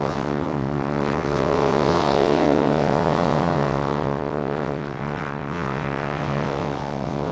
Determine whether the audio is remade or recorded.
remade